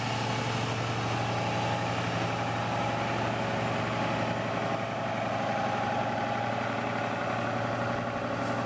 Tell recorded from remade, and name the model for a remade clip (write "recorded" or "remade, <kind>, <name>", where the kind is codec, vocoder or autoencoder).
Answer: recorded